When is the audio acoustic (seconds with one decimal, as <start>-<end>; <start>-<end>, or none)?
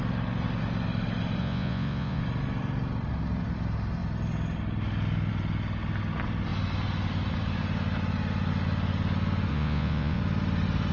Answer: 0.0-1.4; 2.2-9.5; 10.2-10.9